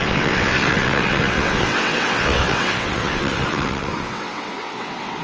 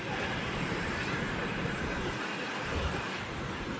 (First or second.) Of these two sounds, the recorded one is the second